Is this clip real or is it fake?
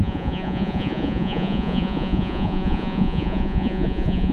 fake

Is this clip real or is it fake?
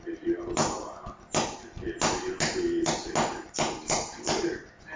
real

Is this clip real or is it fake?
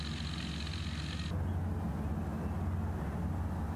real